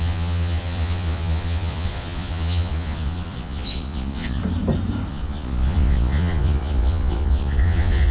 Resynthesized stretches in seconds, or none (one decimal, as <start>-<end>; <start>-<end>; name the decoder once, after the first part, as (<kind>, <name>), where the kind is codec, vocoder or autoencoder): 0.0-4.4 (vocoder, Vocos); 5.1-8.1